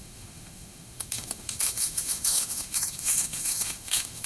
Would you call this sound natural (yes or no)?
no